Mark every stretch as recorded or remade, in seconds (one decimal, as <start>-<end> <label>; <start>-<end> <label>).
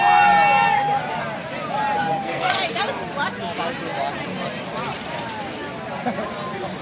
0.0-2.0 recorded; 2.0-2.6 remade; 2.6-6.8 recorded